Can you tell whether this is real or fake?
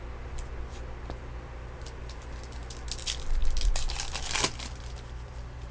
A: real